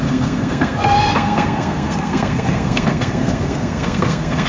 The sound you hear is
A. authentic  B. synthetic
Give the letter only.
B